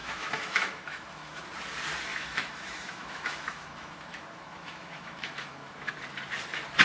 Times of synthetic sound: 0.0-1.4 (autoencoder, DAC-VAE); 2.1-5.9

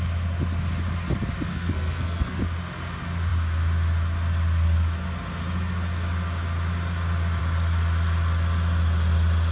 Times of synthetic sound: 1.5-2.4 (codec, SNAC)

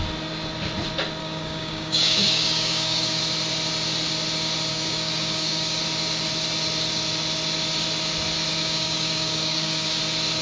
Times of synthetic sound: 1.2-3.2 (codec, DAC); 4.7-5.8; 8.6-10.0

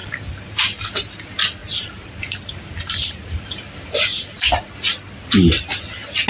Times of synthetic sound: 0.0-0.9 (vocoder, BigVGAN v2); 1.6-4.7

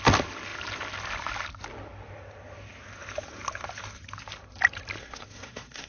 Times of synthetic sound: 5.0-5.9 (codec, SNAC)

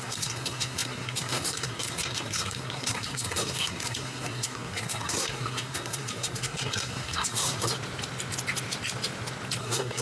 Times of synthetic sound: 0.0-7.7 (codec, SNAC); 9.6-10.0

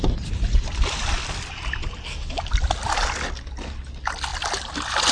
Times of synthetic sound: none

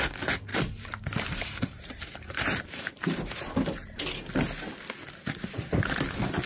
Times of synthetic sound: 0.5-4.0 (vocoder, BigVGAN v2)